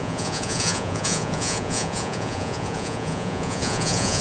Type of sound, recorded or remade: remade